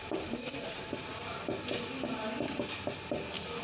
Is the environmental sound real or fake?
real